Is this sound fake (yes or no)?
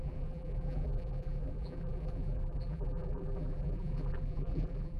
yes